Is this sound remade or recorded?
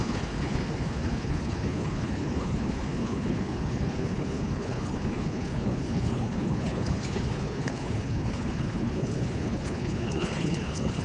remade